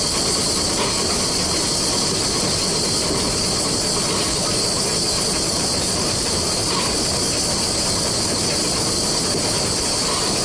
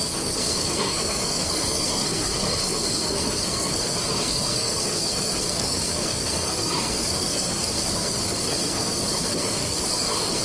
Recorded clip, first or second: first